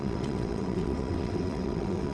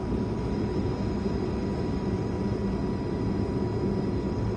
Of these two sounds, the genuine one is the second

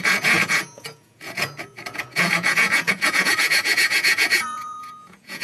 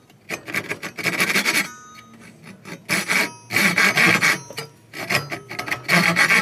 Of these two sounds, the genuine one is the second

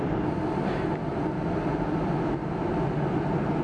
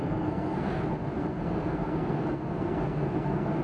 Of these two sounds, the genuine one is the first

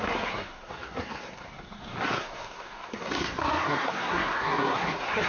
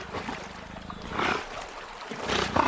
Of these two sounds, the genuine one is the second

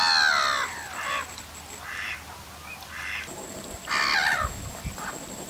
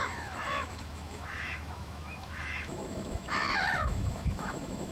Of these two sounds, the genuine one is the first